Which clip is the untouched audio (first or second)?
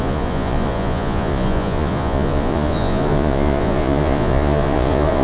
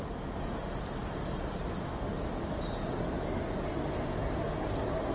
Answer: second